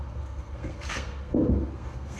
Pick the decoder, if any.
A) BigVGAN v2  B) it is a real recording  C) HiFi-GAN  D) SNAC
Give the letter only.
D